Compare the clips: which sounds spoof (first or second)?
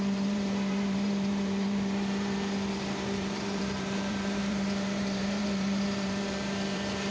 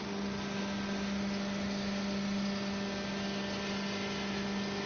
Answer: first